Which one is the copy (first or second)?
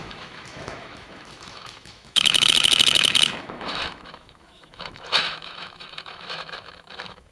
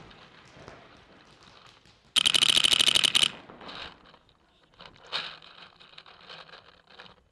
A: first